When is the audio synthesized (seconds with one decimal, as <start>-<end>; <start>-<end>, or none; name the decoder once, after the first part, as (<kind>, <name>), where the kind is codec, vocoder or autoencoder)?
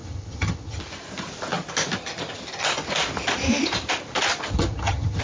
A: 0.0-0.8 (vocoder, HiFi-GAN); 4.5-5.2